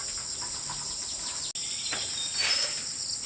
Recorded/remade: recorded